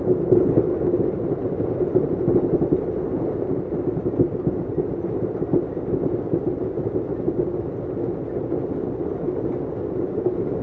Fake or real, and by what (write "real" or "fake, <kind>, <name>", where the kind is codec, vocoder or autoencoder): real